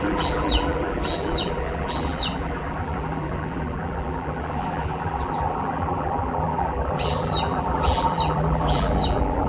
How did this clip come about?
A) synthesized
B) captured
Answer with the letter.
A